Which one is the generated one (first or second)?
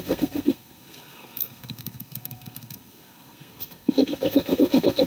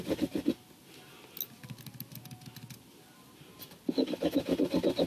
first